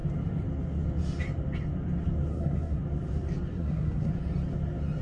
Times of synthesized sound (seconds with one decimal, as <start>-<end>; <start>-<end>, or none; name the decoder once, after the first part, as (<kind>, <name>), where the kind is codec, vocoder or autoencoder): 2.3-2.8 (codec, SNAC); 3.5-4.1